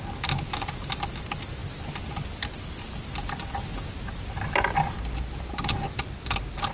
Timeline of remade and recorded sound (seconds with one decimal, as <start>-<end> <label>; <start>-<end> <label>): 0.0-6.7 recorded